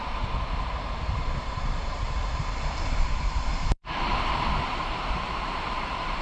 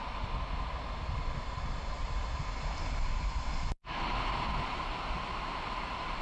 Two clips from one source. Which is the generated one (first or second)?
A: first